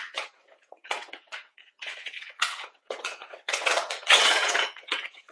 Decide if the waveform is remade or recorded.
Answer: remade